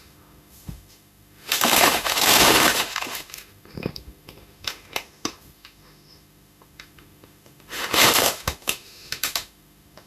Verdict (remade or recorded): remade